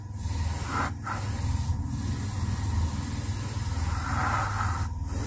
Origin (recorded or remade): recorded